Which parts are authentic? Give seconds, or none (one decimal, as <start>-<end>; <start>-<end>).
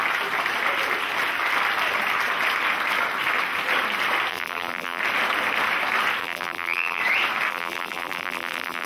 0.0-4.3; 5.0-6.2; 7.0-7.5